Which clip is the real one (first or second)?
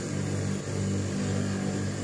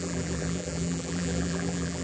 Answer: first